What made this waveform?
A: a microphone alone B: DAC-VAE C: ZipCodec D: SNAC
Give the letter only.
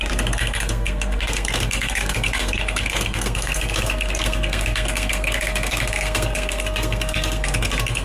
D